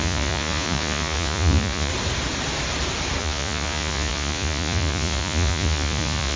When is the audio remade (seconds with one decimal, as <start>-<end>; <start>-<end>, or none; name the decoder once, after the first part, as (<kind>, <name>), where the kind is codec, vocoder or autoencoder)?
0.0-1.9 (vocoder, Vocos); 3.2-6.4